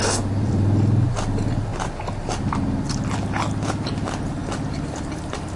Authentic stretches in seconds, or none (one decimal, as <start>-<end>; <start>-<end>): 0.0-5.6